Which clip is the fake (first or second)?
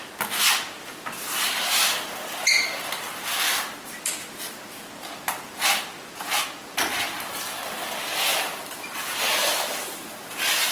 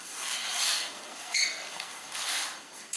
second